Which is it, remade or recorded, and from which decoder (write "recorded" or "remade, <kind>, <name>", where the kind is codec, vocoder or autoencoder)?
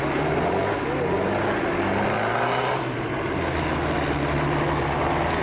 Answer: recorded